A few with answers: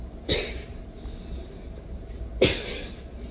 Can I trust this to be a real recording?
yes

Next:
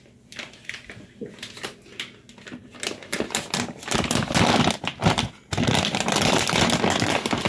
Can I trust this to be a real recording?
yes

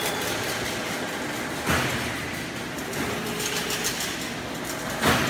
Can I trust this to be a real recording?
yes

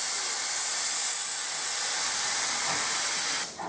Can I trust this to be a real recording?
yes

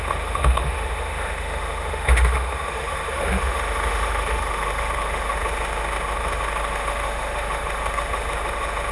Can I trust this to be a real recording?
no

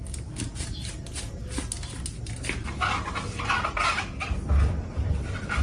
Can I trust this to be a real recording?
yes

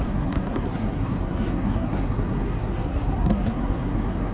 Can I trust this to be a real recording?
no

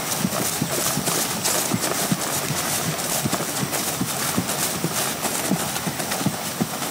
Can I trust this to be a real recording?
yes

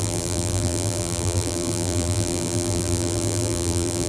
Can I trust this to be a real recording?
no